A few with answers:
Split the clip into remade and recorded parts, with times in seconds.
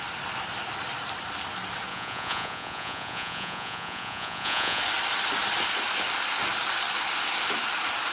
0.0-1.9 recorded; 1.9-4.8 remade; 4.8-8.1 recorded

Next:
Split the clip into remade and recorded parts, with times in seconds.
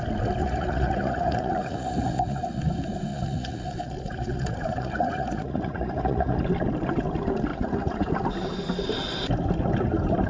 0.0-0.4 recorded; 0.4-2.6 remade; 2.6-3.1 recorded; 3.1-6.4 remade; 6.4-7.5 recorded; 7.5-8.1 remade; 8.1-10.3 recorded